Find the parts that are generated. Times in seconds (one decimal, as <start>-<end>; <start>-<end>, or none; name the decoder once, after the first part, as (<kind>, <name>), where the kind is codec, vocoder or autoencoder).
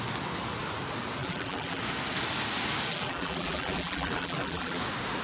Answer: 1.2-1.8 (vocoder, BigVGAN v2); 2.9-4.8